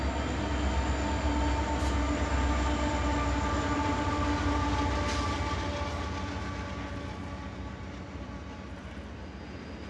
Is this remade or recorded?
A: recorded